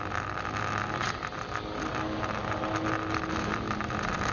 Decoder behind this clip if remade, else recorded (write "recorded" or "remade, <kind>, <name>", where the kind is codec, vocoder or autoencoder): recorded